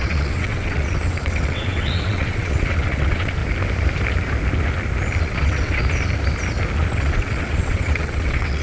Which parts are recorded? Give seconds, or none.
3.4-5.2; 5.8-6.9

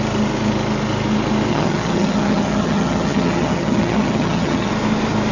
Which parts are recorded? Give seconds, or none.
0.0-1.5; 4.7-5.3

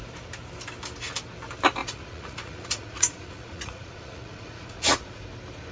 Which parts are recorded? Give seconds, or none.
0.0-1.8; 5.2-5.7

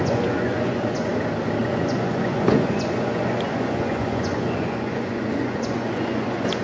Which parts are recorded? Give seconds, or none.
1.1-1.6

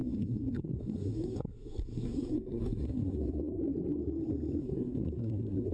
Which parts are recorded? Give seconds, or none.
3.6-4.6

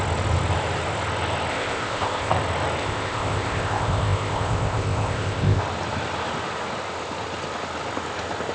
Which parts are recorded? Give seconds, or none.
0.0-1.5; 2.3-2.8; 5.6-8.5

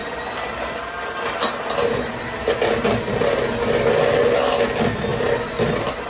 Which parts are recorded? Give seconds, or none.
0.0-6.1

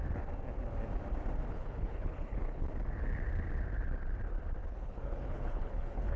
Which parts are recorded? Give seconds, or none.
0.0-1.5; 2.7-4.6